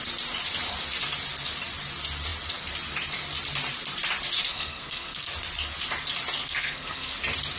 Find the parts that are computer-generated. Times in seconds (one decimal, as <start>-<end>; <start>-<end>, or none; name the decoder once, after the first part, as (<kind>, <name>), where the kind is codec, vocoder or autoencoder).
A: 4.5-5.3 (codec, SNAC); 6.4-7.1